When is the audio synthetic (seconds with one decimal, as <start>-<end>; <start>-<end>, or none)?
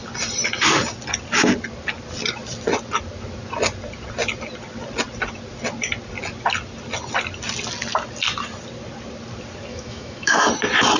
9.7-10.5